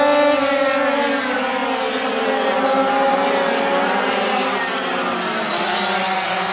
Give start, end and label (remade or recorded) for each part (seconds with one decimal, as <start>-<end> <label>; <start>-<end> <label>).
0.0-6.5 recorded